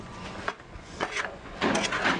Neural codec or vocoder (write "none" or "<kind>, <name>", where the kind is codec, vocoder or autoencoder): vocoder, Vocos